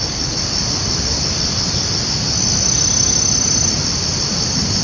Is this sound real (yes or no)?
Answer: yes